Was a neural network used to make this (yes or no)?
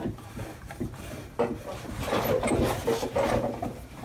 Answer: no